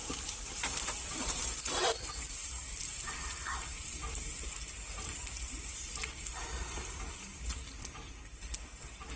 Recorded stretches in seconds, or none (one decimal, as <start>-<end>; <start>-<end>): 1.4-2.4; 7.4-9.2